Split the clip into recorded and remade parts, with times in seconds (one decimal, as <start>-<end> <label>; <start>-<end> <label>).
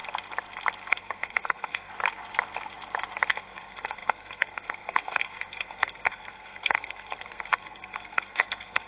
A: 0.0-0.9 recorded; 0.9-1.9 remade; 1.9-3.3 recorded; 3.3-8.9 remade